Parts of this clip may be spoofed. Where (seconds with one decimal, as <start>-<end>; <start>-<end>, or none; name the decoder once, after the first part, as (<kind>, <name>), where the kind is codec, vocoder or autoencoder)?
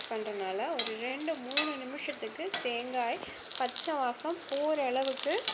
none